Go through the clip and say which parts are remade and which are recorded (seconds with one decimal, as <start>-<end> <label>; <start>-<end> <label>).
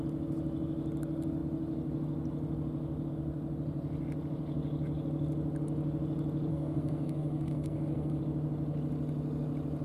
0.0-6.5 recorded; 6.5-8.2 remade; 8.2-9.8 recorded